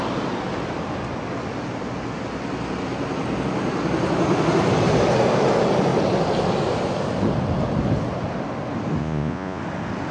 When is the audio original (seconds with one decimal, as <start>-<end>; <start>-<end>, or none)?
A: 0.0-9.0; 9.6-10.1